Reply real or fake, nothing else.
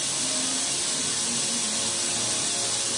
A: real